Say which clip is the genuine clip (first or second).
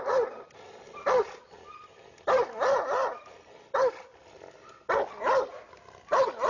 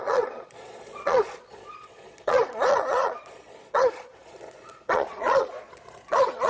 first